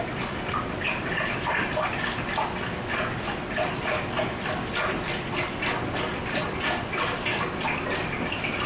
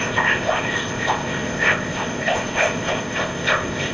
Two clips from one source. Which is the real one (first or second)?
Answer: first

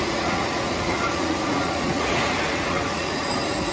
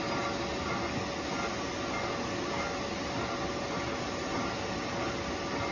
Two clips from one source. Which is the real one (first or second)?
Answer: second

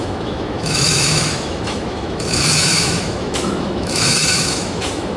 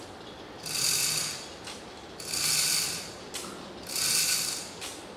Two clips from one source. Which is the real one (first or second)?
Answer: second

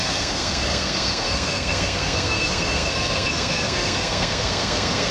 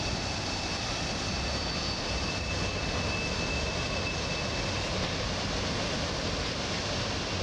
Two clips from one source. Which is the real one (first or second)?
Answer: second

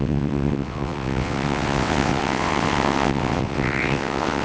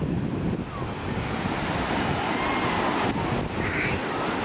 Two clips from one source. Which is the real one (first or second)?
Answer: second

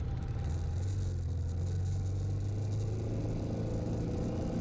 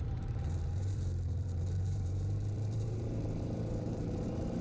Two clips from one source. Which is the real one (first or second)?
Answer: first